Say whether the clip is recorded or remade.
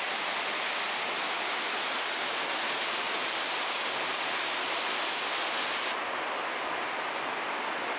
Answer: recorded